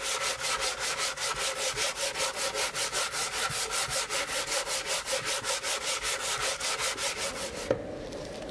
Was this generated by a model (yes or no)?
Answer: no